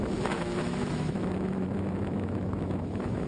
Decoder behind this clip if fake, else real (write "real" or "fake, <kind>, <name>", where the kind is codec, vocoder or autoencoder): fake, autoencoder, DAC-VAE